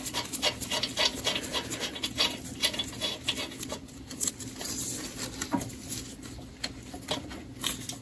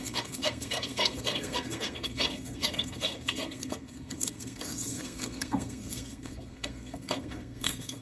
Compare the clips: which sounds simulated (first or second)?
second